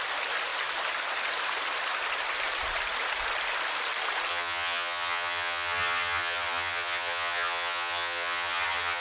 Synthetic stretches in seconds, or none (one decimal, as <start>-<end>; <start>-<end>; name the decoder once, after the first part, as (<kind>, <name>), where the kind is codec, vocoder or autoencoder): 4.3-9.0 (vocoder, HiFi-GAN)